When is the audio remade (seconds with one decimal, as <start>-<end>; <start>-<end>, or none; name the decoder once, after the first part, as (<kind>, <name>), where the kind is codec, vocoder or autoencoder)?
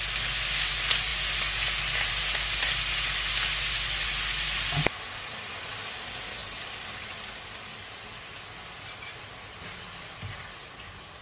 none